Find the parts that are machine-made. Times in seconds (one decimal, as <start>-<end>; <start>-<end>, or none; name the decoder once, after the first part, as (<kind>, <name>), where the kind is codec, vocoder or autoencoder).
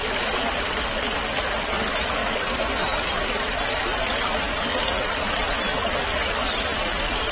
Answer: 3.9-5.3 (vocoder, BigVGAN v2); 6.7-7.3